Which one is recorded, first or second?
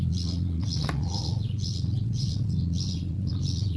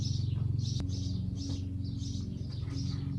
second